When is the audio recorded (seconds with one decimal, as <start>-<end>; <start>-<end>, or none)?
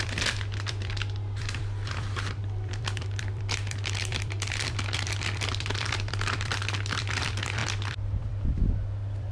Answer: none